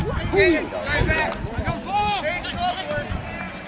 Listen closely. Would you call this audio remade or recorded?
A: recorded